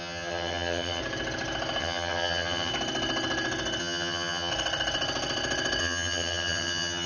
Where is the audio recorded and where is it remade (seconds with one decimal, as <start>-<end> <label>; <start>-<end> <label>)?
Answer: 0.0-1.0 remade; 1.0-1.8 recorded; 1.8-2.7 remade; 2.7-3.8 recorded; 3.8-4.5 remade; 4.5-5.8 recorded; 5.8-7.1 remade